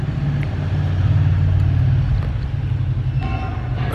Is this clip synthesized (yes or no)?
no